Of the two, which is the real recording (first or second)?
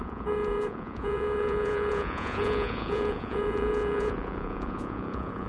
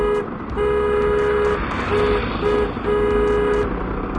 second